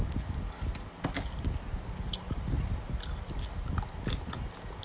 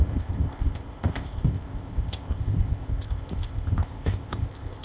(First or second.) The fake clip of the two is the second